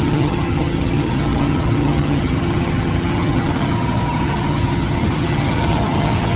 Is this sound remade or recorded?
remade